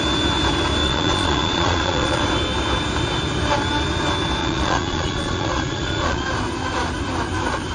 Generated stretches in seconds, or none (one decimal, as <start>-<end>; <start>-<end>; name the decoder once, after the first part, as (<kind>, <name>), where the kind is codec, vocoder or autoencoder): 0.8-2.2 (vocoder, Vocos); 4.4-6.3